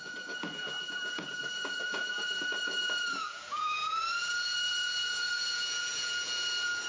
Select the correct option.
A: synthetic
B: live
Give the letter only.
A